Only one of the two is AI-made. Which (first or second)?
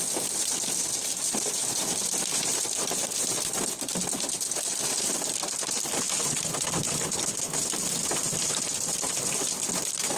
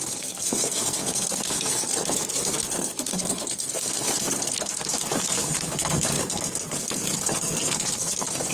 second